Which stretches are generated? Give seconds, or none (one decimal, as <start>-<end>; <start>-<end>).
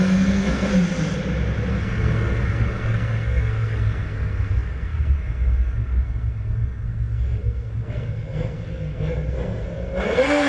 0.0-0.7; 1.7-10.5